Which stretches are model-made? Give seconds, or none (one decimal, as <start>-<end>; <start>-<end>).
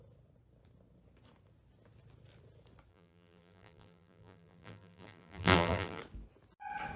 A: 2.9-6.0